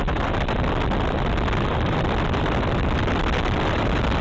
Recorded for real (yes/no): yes